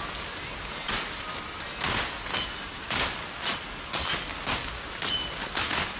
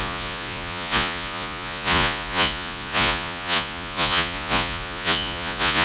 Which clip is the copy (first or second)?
second